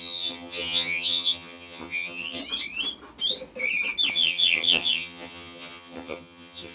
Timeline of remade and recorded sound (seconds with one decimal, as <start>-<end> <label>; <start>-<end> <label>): 0.0-2.4 remade; 2.4-4.1 recorded; 4.1-6.7 remade